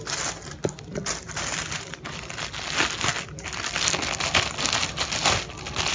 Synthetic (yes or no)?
no